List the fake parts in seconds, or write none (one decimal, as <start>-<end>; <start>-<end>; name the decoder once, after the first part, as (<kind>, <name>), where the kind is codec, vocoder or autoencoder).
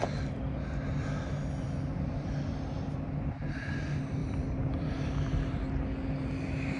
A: 4.2-4.9 (vocoder, BigVGAN v2)